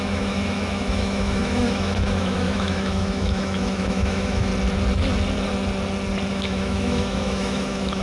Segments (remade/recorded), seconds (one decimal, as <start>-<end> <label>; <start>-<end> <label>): 0.0-4.5 remade; 4.5-6.3 recorded; 6.3-8.0 remade